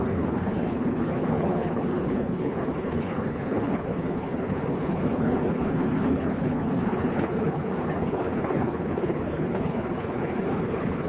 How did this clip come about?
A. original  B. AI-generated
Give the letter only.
B